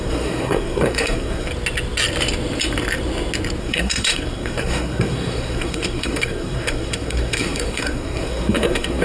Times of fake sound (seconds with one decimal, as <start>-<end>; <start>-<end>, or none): 0.0-1.5; 3.6-9.0